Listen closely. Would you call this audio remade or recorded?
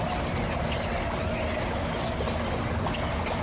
recorded